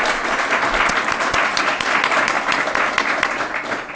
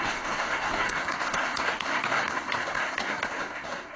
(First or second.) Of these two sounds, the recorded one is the first